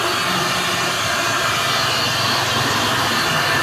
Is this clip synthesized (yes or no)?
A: no